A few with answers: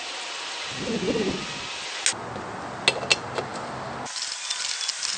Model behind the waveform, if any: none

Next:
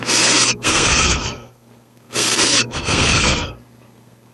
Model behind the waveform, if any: codec, SNAC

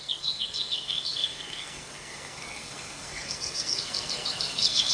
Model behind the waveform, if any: codec, SNAC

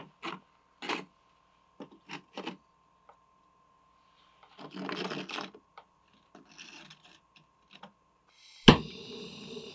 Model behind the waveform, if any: none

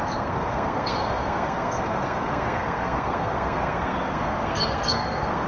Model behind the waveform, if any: codec, SNAC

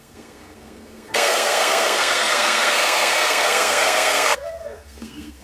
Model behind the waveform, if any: codec, SNAC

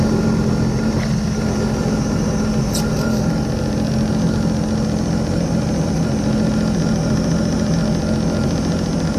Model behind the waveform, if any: none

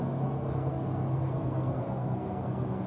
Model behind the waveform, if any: codec, SNAC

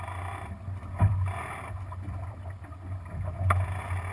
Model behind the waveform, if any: none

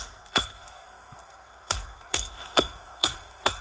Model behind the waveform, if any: codec, SNAC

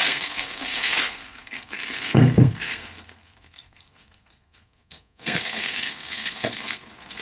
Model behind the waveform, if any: codec, SNAC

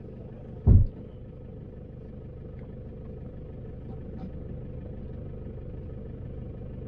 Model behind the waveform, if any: none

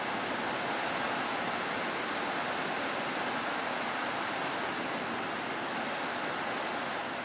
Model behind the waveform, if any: none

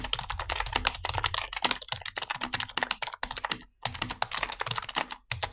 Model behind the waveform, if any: none